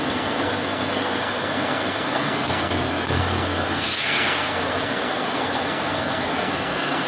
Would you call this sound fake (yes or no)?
yes